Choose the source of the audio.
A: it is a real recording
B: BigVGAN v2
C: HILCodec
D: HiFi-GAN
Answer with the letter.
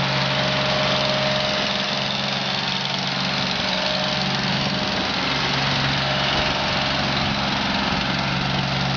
A